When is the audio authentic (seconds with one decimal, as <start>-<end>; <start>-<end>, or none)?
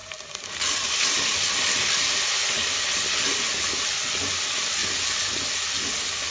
0.0-6.3